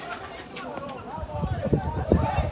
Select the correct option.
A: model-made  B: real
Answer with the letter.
B